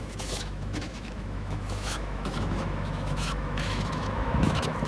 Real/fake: fake